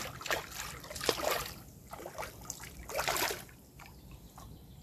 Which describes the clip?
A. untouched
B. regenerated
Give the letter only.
A